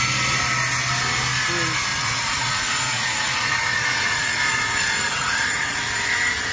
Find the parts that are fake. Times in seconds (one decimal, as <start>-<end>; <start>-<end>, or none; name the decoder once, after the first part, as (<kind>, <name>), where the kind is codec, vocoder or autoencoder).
1.9-5.8 (vocoder, Vocos)